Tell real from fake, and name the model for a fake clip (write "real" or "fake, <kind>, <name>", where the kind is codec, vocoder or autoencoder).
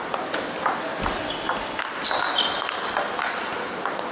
real